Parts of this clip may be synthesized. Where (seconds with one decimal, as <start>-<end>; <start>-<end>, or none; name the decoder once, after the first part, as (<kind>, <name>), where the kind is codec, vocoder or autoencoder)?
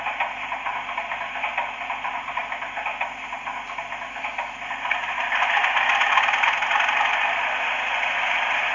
none